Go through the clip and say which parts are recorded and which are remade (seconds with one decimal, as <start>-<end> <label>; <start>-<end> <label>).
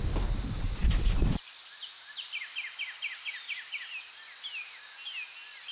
0.0-5.7 recorded